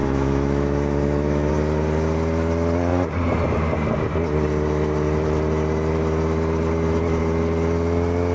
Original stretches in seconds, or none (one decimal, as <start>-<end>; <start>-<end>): 1.5-8.3